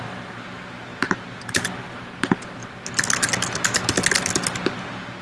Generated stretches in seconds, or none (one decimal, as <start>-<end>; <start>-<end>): none